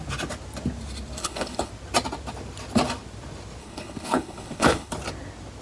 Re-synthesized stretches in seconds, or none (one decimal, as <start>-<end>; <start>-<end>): 1.2-1.7; 3.6-4.9